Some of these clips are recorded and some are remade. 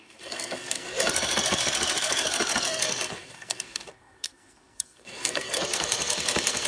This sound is remade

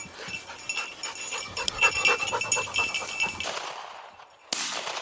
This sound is recorded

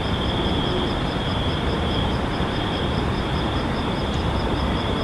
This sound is remade